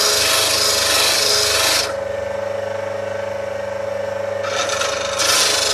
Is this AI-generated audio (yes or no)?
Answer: no